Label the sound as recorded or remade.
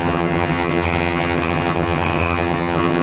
remade